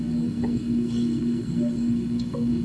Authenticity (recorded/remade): remade